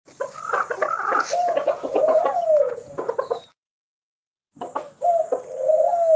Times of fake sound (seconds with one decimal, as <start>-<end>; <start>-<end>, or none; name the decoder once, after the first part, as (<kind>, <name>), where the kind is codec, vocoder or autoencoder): 1.4-4.5 (vocoder, Vocos)